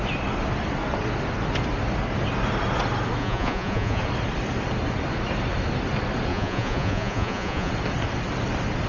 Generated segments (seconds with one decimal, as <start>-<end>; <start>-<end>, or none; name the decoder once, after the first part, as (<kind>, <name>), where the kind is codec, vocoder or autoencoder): 3.2-4.0 (vocoder, Vocos); 6.3-7.7